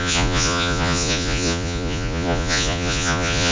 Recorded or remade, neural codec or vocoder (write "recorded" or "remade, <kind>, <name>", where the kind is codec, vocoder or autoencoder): remade, vocoder, Vocos